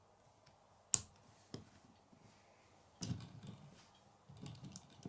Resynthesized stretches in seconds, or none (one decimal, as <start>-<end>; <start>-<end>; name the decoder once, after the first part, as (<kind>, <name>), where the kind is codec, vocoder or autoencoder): none